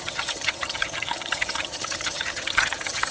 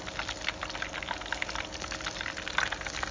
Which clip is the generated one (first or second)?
first